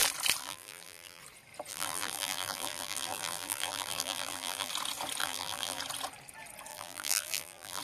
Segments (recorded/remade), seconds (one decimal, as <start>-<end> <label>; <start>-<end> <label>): 0.0-0.4 recorded; 0.4-1.2 remade; 1.2-1.7 recorded; 1.7-4.7 remade; 4.7-5.2 recorded; 5.2-5.8 remade; 5.8-6.7 recorded; 6.7-7.8 remade